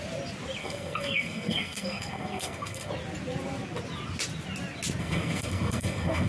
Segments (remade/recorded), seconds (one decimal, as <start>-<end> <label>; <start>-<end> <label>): 0.0-0.6 recorded; 0.6-2.9 remade; 2.9-5.0 recorded; 5.0-6.3 remade